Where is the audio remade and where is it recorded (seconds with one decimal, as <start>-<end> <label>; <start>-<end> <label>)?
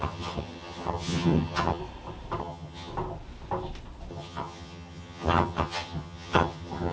0.0-1.8 remade; 1.8-2.4 recorded; 2.4-2.9 remade; 2.9-4.1 recorded; 4.1-6.9 remade